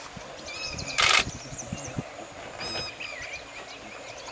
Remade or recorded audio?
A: recorded